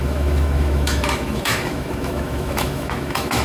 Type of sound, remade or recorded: remade